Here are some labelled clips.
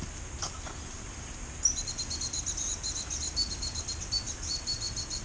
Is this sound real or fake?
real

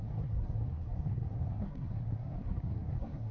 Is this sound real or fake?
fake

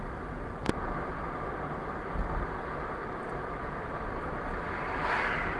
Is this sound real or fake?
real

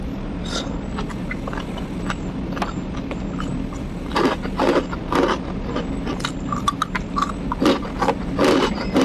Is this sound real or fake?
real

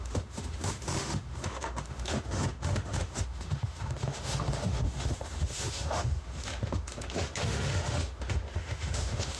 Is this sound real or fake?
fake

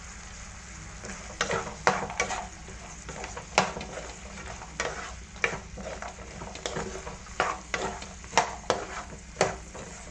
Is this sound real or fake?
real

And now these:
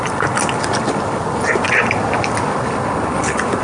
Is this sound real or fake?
real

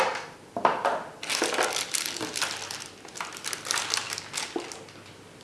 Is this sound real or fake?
real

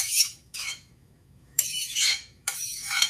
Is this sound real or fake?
fake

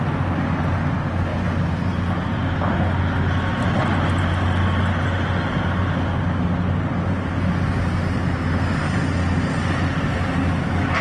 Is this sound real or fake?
real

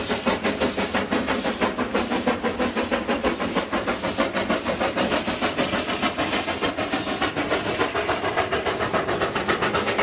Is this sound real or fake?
real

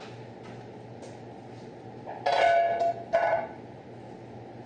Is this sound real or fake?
real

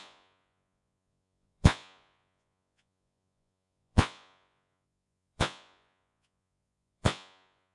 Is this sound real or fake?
fake